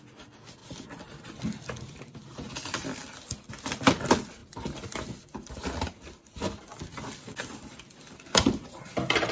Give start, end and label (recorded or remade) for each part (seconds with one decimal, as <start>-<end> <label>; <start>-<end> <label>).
0.0-9.3 recorded